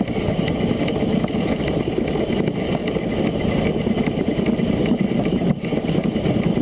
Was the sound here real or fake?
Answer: real